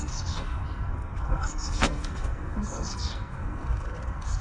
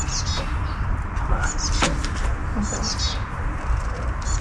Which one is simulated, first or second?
first